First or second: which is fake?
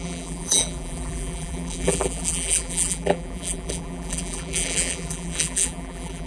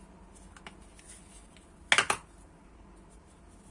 first